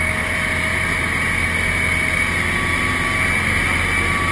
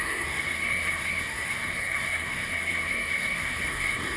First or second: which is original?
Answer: first